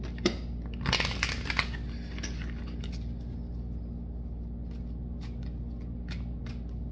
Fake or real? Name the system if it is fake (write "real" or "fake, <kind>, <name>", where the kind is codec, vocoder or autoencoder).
real